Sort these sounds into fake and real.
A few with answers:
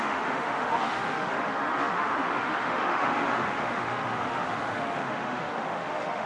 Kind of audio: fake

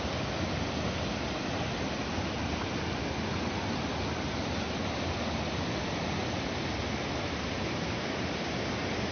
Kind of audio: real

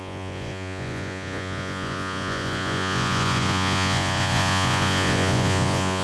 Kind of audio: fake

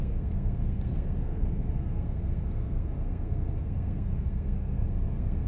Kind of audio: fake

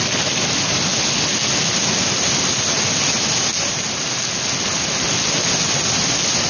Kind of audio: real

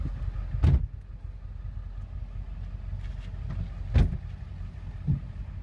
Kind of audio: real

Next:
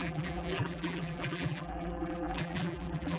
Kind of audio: fake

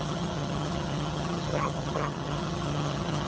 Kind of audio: fake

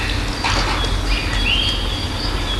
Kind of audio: real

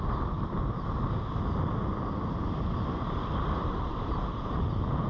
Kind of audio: real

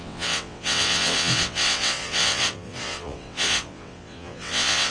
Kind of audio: fake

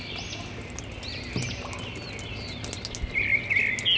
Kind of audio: real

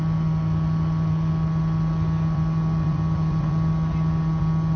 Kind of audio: real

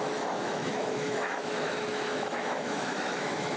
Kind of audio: fake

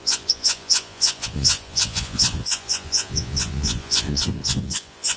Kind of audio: fake